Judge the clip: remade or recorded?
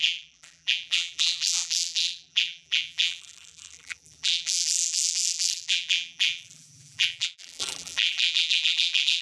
remade